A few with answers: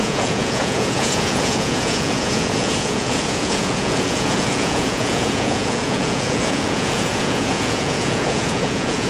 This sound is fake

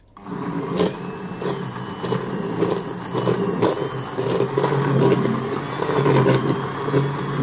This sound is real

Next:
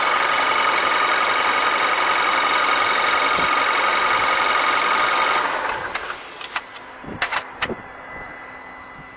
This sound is real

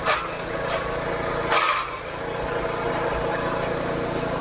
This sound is real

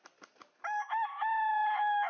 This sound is real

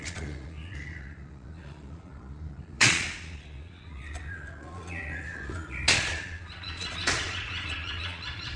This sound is fake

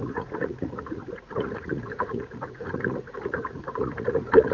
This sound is fake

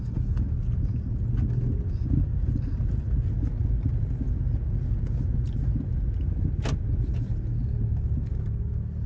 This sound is real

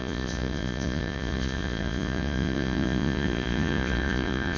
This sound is fake